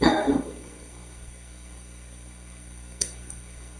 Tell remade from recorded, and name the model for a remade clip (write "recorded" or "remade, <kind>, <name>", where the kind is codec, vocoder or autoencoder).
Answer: remade, codec, SNAC